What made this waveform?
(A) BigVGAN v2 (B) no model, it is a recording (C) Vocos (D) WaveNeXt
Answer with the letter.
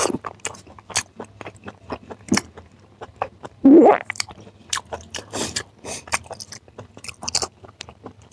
A